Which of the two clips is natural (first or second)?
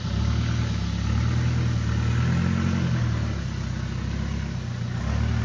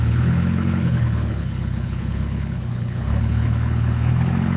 first